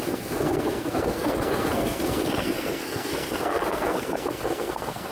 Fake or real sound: fake